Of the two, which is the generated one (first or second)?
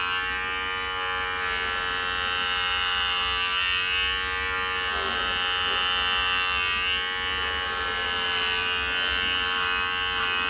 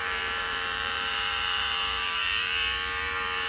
second